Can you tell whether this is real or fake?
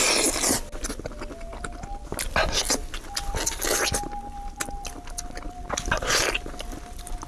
real